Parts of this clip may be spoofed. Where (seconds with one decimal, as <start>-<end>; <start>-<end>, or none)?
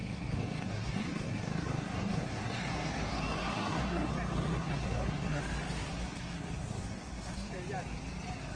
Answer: 0.0-2.9; 3.4-4.1; 4.5-5.4; 5.9-7.5